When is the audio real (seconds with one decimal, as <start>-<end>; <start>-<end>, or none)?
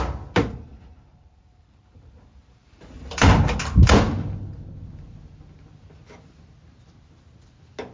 0.0-0.7; 3.6-7.9